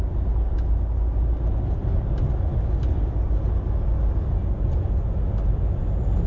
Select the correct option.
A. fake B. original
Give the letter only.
B